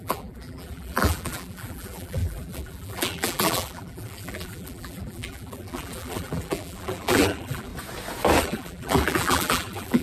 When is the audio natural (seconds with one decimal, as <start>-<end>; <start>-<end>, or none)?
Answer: 7.7-8.4